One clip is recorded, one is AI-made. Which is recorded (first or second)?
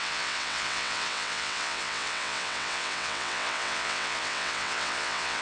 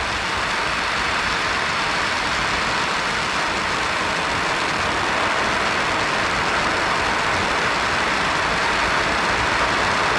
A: second